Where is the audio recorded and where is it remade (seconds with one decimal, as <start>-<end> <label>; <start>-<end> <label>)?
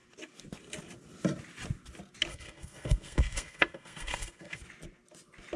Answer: 0.0-2.3 recorded; 2.3-4.6 remade; 4.6-5.6 recorded